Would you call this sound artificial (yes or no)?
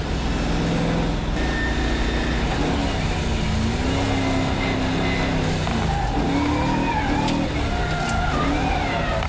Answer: no